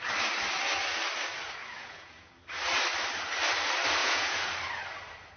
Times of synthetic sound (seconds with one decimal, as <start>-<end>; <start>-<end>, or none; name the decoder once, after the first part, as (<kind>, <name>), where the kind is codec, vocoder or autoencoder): 1.6-2.4 (vocoder, Vocos); 4.0-4.5